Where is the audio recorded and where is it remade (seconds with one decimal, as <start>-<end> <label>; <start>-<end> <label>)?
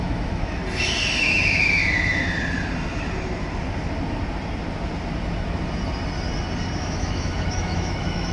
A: 0.0-0.6 remade; 0.6-1.2 recorded; 1.2-1.8 remade; 1.8-6.8 recorded; 6.8-8.3 remade